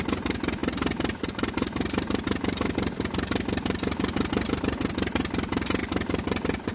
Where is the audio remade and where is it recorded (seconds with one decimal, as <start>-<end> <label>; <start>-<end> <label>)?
0.0-6.7 recorded